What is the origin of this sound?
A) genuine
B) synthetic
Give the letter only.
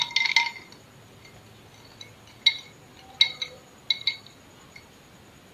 A